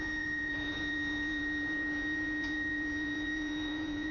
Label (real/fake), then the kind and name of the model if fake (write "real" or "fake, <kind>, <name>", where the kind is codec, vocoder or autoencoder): fake, vocoder, Vocos